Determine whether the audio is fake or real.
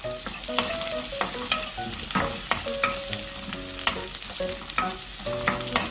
real